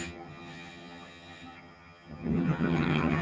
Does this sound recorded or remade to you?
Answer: remade